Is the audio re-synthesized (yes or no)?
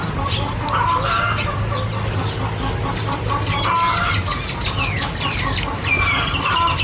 no